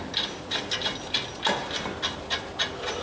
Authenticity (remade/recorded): recorded